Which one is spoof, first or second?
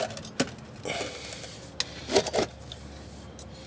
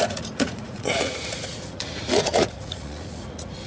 second